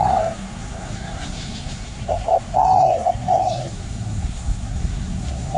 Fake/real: fake